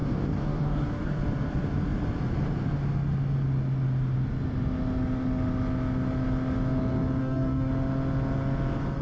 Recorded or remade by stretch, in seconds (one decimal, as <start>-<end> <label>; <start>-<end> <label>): 0.0-1.2 remade; 1.2-7.2 recorded; 7.2-7.7 remade; 7.7-9.0 recorded